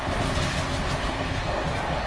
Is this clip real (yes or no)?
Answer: yes